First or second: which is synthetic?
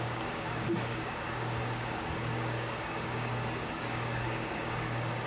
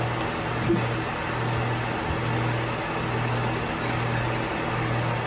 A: first